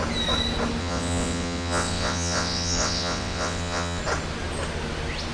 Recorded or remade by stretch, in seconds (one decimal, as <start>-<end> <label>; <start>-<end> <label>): 0.0-0.8 recorded; 0.8-4.0 remade; 4.0-5.3 recorded